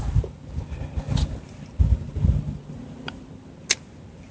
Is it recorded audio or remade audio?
recorded